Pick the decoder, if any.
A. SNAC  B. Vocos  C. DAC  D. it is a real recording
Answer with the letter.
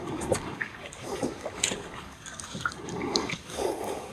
C